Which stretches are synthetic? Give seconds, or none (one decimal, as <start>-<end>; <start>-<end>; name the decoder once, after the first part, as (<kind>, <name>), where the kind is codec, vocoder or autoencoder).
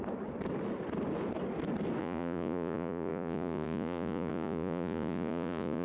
2.0-5.8 (vocoder, Vocos)